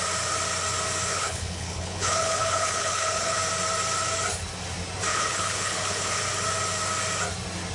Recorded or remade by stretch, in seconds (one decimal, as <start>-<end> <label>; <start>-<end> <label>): 0.0-1.1 recorded; 1.1-3.4 remade; 3.4-5.1 recorded; 5.1-6.2 remade; 6.2-7.7 recorded